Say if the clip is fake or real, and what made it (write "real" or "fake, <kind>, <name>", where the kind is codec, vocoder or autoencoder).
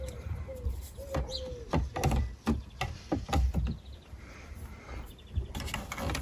real